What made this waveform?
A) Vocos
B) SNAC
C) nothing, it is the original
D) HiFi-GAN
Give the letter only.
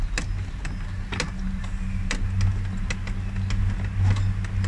C